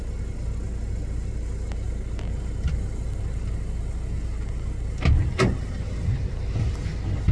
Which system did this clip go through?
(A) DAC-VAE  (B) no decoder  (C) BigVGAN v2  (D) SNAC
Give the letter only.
B